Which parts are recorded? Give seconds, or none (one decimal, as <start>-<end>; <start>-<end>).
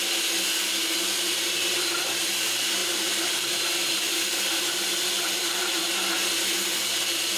0.0-0.6; 5.8-7.0